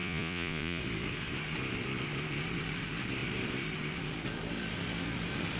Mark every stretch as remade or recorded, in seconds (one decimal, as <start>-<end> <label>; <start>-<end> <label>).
0.0-0.8 remade; 0.8-5.6 recorded